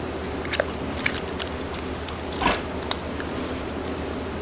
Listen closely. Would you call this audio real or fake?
real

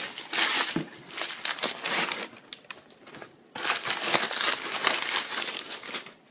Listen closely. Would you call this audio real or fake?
real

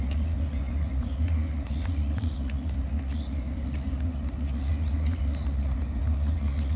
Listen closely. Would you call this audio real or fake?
fake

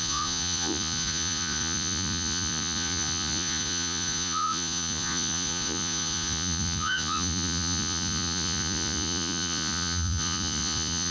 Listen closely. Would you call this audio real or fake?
fake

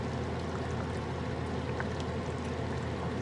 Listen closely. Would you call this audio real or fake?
real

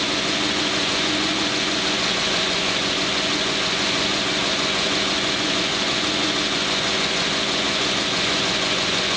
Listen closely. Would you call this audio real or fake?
fake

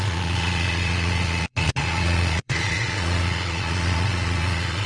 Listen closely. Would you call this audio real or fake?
fake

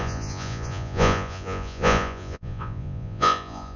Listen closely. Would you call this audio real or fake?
fake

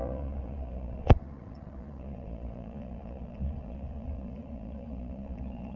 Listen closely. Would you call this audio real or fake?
fake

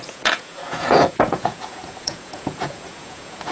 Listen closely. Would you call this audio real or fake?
fake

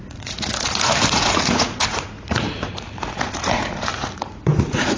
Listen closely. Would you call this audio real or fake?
fake